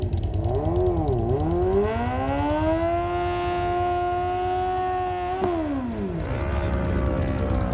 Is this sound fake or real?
real